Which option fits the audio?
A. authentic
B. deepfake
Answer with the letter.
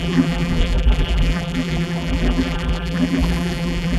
B